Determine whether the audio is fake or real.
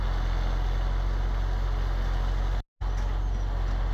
real